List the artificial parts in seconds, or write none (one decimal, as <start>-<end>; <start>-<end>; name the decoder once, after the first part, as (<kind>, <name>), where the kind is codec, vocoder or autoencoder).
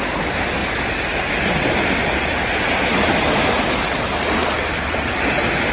none